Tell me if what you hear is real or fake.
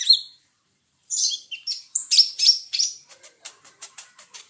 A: fake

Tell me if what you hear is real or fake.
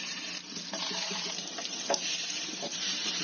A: fake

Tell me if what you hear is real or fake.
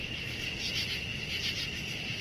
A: real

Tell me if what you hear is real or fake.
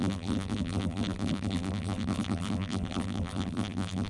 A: fake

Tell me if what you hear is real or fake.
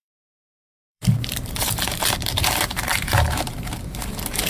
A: fake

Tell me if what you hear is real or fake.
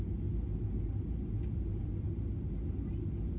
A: real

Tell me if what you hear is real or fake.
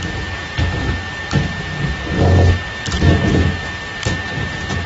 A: real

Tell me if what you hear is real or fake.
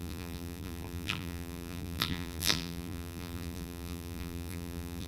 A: fake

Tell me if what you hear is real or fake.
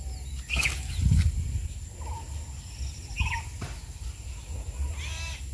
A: real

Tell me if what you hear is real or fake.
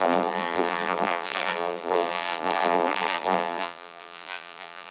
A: fake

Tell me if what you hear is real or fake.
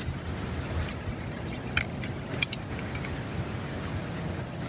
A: real